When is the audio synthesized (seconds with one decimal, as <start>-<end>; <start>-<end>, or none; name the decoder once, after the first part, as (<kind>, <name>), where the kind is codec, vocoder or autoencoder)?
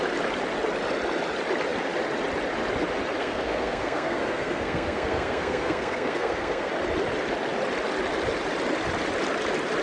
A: 3.2-6.7 (codec, SNAC)